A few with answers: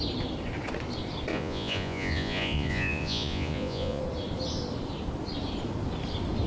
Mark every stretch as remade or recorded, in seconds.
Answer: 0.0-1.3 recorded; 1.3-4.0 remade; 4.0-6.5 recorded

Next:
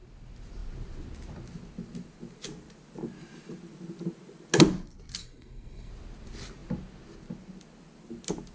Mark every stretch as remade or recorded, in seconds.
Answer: 0.0-5.2 recorded; 5.2-5.9 remade; 5.9-8.5 recorded

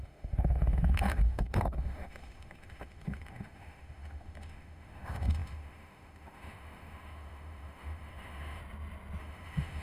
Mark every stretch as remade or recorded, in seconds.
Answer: 0.0-8.6 remade; 8.6-9.2 recorded; 9.2-9.8 remade

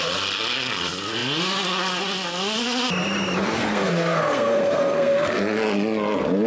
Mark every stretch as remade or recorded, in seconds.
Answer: 0.0-3.6 recorded; 3.6-5.4 remade; 5.4-6.5 recorded